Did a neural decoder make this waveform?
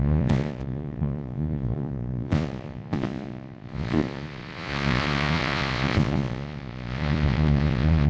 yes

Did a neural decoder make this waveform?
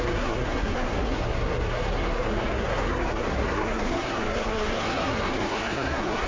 yes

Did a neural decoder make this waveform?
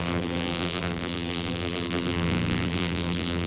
yes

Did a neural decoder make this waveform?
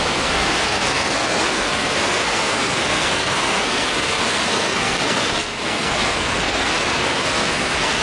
yes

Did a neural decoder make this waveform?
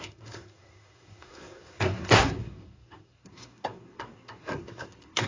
yes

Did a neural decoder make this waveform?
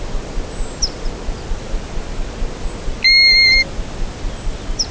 no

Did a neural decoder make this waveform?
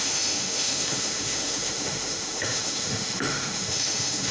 yes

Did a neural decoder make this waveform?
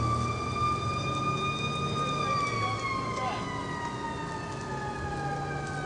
no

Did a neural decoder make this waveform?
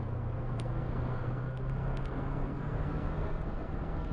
yes